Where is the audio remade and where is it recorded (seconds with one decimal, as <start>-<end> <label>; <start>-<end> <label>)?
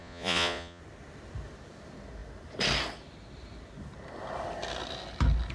0.0-0.8 remade; 0.8-5.5 recorded